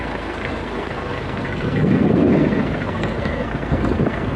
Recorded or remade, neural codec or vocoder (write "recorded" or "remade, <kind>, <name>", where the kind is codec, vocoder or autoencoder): remade, codec, SNAC